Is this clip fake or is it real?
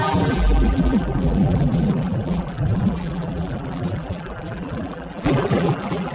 fake